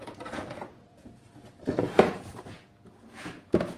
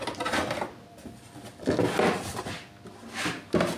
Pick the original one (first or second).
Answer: second